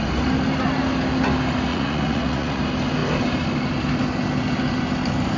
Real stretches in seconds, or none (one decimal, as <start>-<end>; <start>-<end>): 0.0-1.7; 2.6-5.4

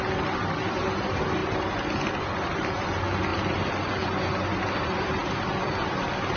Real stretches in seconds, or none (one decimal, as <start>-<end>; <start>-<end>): 0.0-6.4